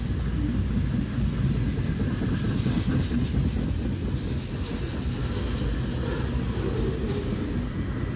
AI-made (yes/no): no